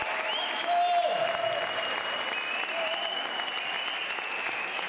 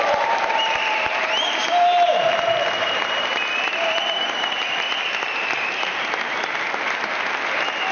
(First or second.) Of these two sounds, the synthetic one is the second